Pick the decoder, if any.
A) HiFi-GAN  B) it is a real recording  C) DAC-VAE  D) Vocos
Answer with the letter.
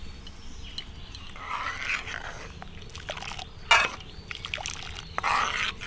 B